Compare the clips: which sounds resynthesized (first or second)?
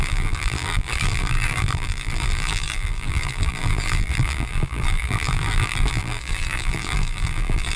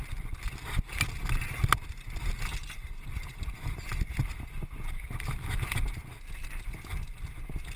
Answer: first